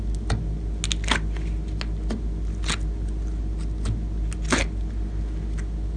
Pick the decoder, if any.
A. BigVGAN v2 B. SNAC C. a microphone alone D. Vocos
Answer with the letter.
C